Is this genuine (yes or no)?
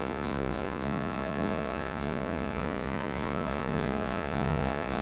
no